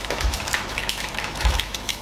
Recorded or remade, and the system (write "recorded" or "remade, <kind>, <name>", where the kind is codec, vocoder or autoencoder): remade, autoencoder, DAC-VAE